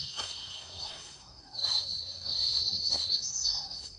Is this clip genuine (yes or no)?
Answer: no